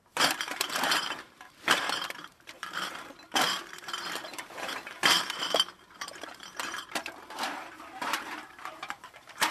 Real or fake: fake